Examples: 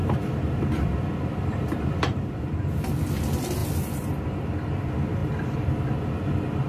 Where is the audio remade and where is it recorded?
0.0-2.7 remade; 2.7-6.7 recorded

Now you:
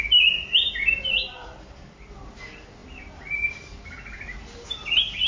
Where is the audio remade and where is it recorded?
0.0-1.2 recorded; 1.2-2.1 remade; 2.1-2.8 recorded; 2.8-3.6 remade; 3.6-5.3 recorded

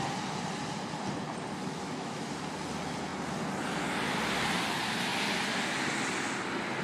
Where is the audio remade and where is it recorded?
0.0-1.6 recorded; 1.6-2.3 remade; 2.3-6.8 recorded

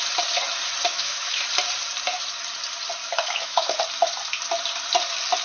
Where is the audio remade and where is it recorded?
0.0-0.9 recorded; 0.9-1.5 remade; 1.5-3.0 recorded; 3.0-3.8 remade; 3.8-5.4 recorded

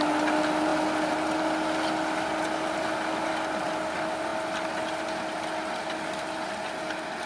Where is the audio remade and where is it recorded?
0.0-7.3 recorded

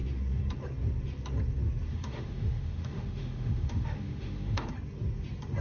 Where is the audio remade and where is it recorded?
0.0-1.9 recorded; 1.9-4.7 remade; 4.7-5.6 recorded

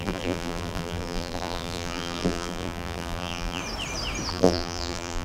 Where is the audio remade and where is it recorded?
0.0-3.6 remade; 3.6-4.3 recorded; 4.3-5.2 remade